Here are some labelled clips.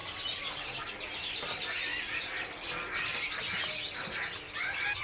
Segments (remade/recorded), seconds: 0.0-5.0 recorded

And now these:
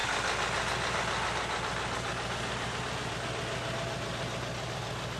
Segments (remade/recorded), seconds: 0.0-5.2 recorded

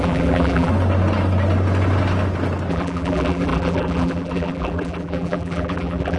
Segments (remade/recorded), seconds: 0.0-0.7 remade; 0.7-2.7 recorded; 2.7-6.2 remade

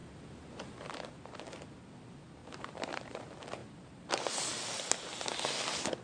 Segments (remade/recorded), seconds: 0.0-2.4 recorded; 2.4-3.2 remade; 3.2-3.6 recorded; 3.6-4.2 remade; 4.2-6.0 recorded

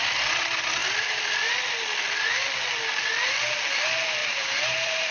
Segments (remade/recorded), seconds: 0.0-4.2 recorded; 4.2-5.1 remade

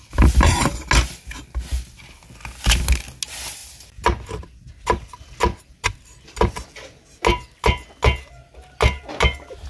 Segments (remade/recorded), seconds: 0.0-0.7 remade; 0.7-3.6 recorded; 3.6-4.7 remade; 4.7-9.7 recorded

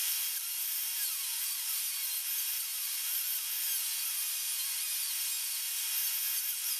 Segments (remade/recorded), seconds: 0.0-1.9 remade; 1.9-2.7 recorded; 2.7-3.4 remade; 3.4-6.8 recorded